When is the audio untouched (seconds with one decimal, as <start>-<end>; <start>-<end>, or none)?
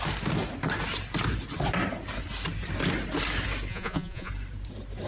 0.0-3.7; 4.3-5.1